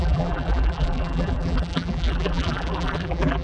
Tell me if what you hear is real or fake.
fake